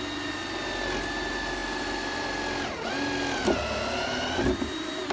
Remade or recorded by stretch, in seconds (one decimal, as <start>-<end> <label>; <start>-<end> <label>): 0.0-5.1 recorded